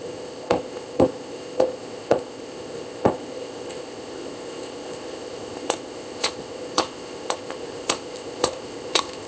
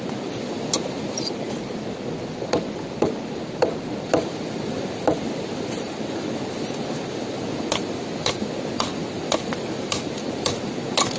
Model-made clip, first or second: first